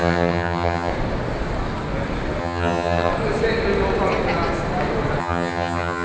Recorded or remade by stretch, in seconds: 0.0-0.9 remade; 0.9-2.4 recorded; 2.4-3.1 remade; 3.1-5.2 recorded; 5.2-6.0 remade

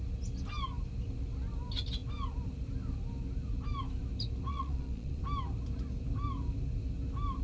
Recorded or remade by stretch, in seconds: 0.0-4.5 recorded; 4.5-5.2 remade; 5.2-7.4 recorded

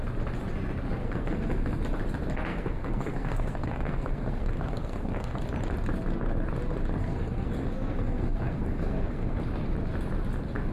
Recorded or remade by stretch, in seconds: 0.0-1.0 recorded; 1.0-1.8 remade; 1.8-2.5 recorded; 2.5-5.4 remade; 5.4-7.0 recorded; 7.0-9.4 remade; 9.4-10.7 recorded